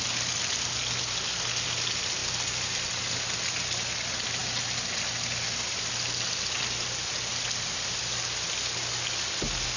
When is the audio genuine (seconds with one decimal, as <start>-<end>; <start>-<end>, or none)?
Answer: 0.0-9.8